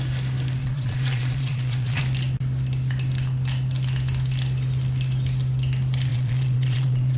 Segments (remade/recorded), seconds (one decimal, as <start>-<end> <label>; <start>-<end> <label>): 0.0-0.6 recorded; 0.6-2.0 remade; 2.0-6.1 recorded; 6.1-7.2 remade